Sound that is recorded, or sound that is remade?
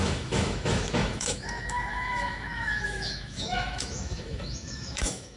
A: remade